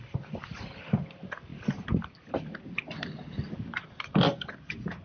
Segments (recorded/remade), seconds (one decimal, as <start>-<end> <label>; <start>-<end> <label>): 0.0-5.0 recorded